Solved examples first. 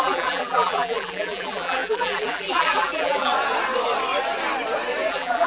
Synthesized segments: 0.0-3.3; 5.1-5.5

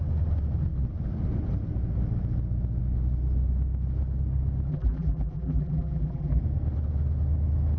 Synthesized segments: 4.7-6.4

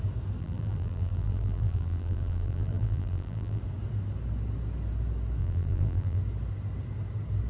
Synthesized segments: 0.4-3.6; 5.4-6.2